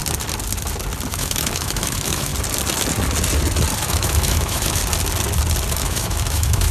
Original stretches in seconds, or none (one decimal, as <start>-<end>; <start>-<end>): 0.0-1.1; 2.3-3.8; 4.8-5.7